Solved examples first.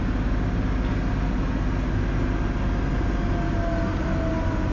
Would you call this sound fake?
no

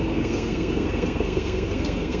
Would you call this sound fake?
yes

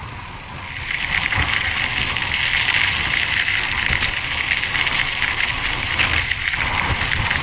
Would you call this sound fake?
no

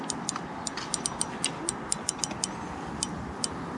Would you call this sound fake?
no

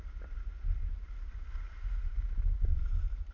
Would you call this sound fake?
no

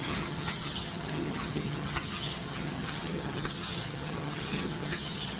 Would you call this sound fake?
yes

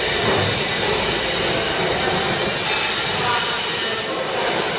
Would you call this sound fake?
no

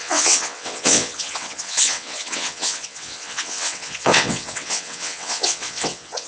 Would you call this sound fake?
yes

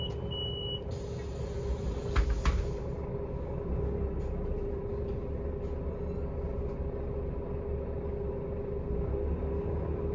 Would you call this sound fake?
no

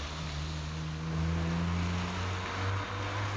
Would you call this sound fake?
no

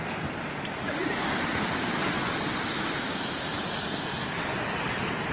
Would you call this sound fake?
no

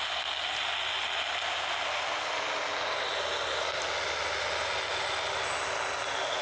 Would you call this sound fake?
no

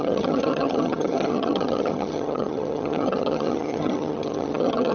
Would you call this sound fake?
yes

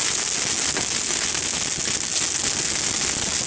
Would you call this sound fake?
no